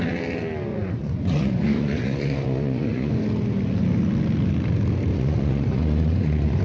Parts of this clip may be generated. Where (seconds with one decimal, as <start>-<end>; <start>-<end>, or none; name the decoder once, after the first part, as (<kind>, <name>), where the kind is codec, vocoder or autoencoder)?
0.7-3.1 (vocoder, Vocos); 5.1-6.6